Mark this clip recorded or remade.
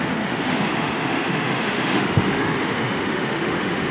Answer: remade